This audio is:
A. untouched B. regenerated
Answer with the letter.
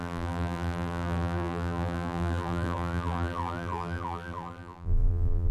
B